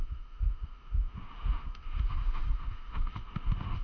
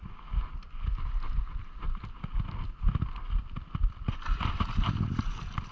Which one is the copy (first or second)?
first